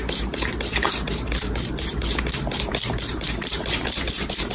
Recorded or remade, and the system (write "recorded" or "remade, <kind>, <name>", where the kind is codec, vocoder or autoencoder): remade, vocoder, BigVGAN v2